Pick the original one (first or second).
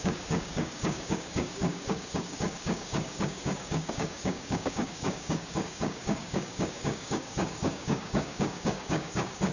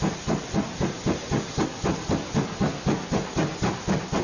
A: second